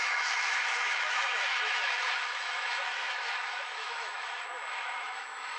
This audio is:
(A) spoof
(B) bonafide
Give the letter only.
A